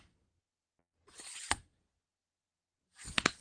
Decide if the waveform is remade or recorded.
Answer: remade